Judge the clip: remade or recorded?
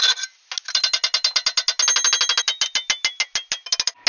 recorded